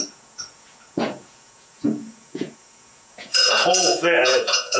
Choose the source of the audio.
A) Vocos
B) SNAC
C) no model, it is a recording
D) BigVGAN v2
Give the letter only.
A